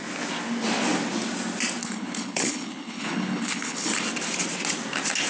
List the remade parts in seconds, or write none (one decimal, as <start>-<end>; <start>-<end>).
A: 1.8-3.9